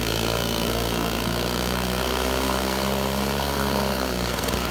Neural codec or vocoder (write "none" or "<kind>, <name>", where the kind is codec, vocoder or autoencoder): codec, SNAC